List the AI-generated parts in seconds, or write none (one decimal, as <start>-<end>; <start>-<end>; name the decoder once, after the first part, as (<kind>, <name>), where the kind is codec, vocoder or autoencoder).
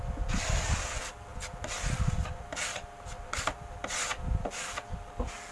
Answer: none